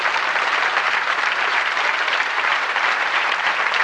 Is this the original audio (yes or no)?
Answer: no